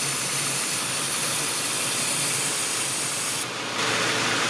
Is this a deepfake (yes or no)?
no